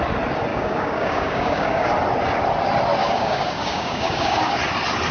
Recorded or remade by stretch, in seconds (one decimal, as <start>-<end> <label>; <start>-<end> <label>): 0.0-0.5 recorded; 0.5-1.9 remade; 1.9-3.0 recorded; 3.0-4.6 remade; 4.6-5.1 recorded